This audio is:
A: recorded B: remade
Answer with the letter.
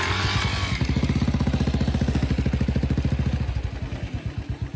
A